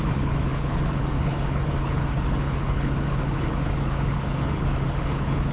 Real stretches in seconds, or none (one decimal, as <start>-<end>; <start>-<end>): none